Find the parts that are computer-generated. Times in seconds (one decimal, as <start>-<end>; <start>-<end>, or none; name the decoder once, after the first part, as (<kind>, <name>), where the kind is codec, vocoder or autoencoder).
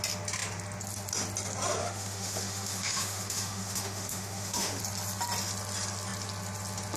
1.8-4.8 (autoencoder, DAC-VAE)